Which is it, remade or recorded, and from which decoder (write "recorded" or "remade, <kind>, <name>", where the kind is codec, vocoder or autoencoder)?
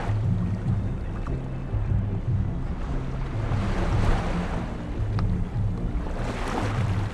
recorded